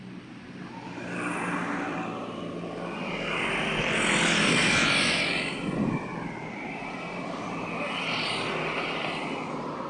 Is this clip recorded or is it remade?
recorded